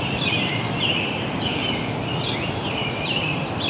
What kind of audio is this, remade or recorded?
remade